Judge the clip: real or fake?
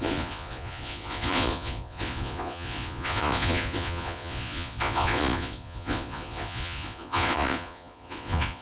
fake